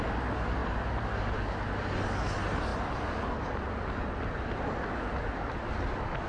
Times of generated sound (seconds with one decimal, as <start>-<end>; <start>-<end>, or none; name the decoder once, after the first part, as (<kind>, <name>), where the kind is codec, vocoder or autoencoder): 0.6-1.2 (vocoder, BigVGAN v2)

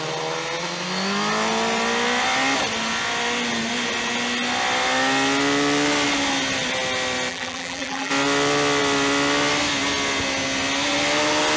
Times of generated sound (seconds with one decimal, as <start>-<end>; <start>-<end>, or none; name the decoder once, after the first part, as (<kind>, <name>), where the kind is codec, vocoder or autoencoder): 7.3-8.1 (vocoder, BigVGAN v2)

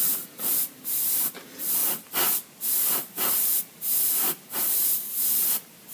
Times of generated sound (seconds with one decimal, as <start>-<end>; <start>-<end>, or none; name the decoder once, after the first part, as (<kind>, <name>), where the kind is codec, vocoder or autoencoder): 0.0-1.8 (vocoder, BigVGAN v2); 2.8-5.9

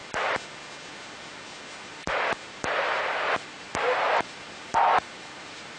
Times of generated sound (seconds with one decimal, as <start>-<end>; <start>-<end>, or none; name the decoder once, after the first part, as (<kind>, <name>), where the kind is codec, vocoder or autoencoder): 1.9-5.8 (vocoder, BigVGAN v2)

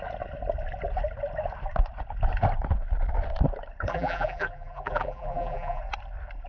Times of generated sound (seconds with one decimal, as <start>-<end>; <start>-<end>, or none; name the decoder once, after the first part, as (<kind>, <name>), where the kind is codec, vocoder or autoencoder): 3.9-5.8 (vocoder, BigVGAN v2)

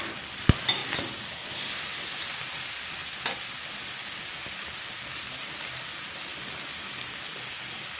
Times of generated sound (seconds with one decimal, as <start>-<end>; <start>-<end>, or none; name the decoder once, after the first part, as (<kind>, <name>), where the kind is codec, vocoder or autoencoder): 0.0-0.8 (vocoder, BigVGAN v2); 1.7-3.0; 4.7-8.0

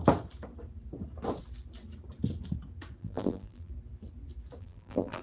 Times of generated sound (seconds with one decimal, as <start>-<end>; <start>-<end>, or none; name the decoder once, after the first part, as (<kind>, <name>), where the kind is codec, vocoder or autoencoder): 3.0-3.7 (vocoder, BigVGAN v2); 4.6-5.2

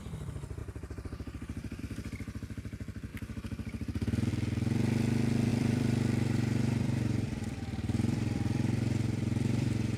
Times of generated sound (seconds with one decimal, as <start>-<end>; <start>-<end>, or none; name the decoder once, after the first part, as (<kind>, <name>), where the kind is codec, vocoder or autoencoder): 0.6-1.8 (vocoder, BigVGAN v2); 5.5-10.0